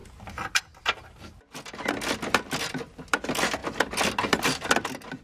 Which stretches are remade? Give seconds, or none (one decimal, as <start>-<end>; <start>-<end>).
none